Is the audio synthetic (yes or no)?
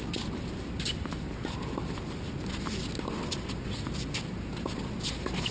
no